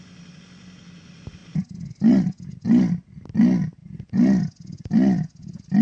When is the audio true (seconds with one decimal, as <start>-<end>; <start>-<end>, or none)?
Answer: 0.0-5.8